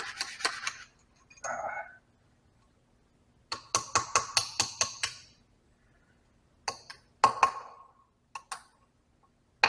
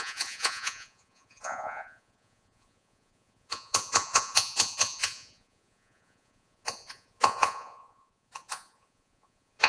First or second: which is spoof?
second